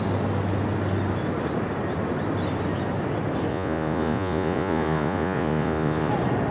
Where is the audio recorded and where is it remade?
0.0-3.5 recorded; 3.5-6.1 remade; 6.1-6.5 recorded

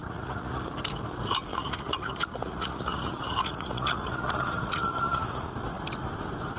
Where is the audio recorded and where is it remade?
0.0-0.6 remade; 0.6-1.5 recorded; 1.5-5.5 remade; 5.5-6.6 recorded

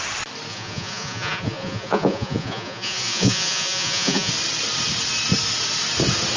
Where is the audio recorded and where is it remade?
0.0-0.5 recorded; 0.5-4.3 remade; 4.3-6.4 recorded

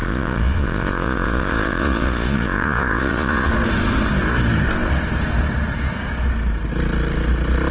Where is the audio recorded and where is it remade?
0.0-3.5 remade; 3.5-7.7 recorded